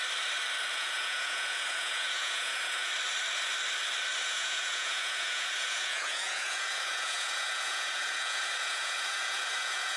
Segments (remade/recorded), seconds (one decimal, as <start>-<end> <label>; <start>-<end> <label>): 0.0-0.7 recorded; 0.7-2.9 remade; 2.9-4.2 recorded; 4.2-10.0 remade